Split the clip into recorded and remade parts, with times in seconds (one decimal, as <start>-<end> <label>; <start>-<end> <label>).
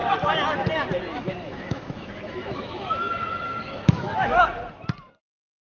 0.0-1.1 recorded; 1.1-4.4 remade; 4.4-5.6 recorded